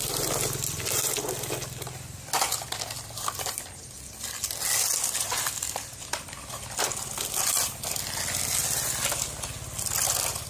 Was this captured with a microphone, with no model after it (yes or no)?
yes